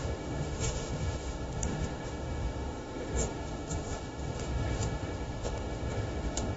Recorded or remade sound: remade